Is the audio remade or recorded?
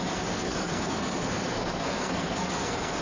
remade